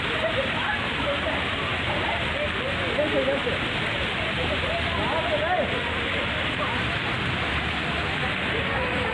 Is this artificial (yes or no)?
no